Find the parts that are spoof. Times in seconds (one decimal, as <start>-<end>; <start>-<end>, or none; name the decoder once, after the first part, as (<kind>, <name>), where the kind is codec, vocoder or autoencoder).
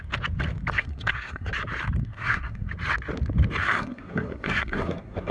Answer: 0.8-1.5 (codec, SNAC); 2.0-2.7; 3.6-5.3